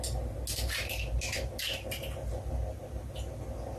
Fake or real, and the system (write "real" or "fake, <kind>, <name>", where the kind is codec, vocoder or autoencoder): real